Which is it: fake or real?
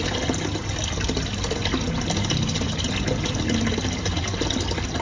real